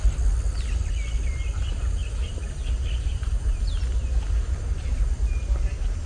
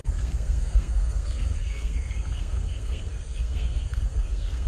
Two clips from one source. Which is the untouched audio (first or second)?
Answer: first